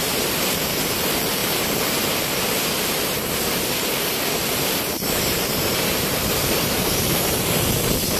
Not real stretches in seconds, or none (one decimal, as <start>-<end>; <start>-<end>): 0.0-1.4; 4.6-8.2